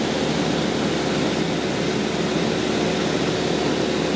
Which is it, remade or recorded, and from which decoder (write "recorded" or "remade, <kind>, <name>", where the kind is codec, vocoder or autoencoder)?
recorded